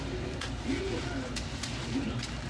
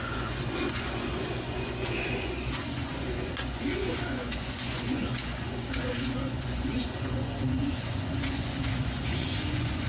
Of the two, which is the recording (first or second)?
first